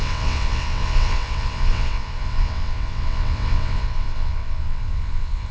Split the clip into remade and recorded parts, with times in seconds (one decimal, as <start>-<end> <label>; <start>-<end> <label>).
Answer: 0.0-5.5 remade